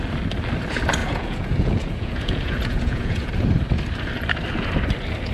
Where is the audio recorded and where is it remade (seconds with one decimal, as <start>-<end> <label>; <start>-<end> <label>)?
0.0-1.0 recorded; 1.0-3.3 remade; 3.3-5.3 recorded